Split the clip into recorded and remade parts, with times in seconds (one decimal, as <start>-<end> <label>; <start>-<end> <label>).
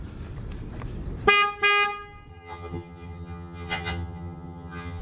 0.0-2.3 recorded; 2.3-5.0 remade